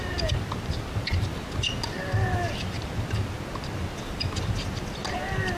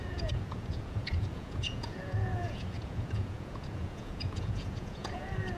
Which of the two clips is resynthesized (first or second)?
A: second